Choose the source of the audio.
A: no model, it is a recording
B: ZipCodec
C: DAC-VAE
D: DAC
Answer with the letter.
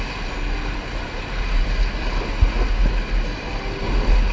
A